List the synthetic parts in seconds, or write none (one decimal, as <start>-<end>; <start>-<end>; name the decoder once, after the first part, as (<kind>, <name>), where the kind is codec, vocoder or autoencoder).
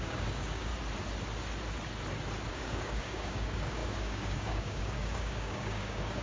0.0-0.7 (codec, DAC); 2.5-6.2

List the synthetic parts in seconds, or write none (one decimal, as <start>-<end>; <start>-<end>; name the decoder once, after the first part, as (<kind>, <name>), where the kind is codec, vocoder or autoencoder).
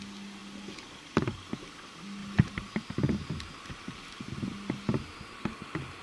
none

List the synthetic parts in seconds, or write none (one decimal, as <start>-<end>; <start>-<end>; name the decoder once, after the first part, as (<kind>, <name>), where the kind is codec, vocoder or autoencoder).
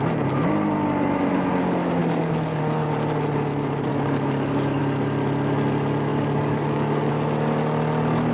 2.0-2.6 (codec, DAC); 3.9-4.8; 6.1-7.1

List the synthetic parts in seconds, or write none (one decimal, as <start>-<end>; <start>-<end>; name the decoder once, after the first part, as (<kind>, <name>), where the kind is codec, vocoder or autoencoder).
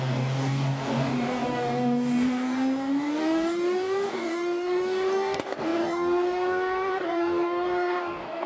0.0-8.5 (codec, DAC)